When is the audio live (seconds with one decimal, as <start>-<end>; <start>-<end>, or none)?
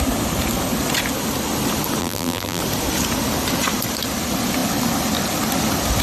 0.0-2.0; 2.6-6.0